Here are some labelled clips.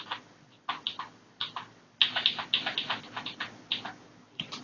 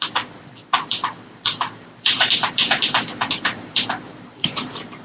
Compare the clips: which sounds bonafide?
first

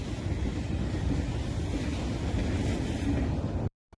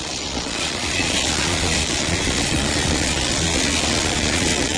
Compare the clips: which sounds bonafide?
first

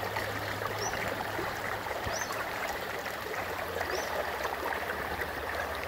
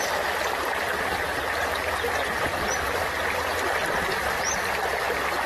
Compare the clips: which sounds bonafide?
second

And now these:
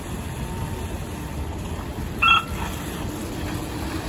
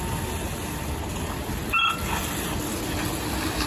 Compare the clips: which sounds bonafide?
second